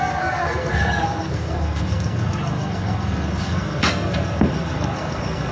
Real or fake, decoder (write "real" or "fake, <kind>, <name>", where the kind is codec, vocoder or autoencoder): fake, codec, SNAC